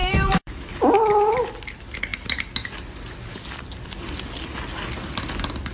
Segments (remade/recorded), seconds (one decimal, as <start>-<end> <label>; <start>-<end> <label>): 0.0-0.7 remade; 0.7-5.7 recorded